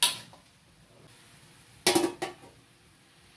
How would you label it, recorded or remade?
recorded